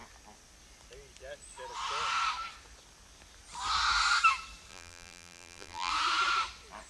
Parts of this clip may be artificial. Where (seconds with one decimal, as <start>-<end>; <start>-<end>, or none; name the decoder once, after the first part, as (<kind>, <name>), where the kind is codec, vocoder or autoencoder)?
4.7-5.9 (vocoder, BigVGAN v2)